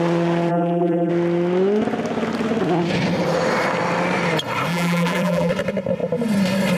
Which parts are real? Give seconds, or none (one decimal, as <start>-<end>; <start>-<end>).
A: 0.0-0.5; 1.1-4.7; 5.5-6.8